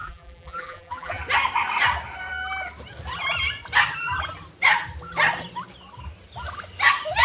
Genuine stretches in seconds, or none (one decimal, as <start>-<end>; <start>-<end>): 1.2-7.2